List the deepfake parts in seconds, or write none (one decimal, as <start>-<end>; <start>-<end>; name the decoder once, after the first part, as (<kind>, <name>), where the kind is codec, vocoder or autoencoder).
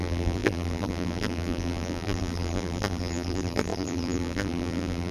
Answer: 0.0-5.1 (vocoder, BigVGAN v2)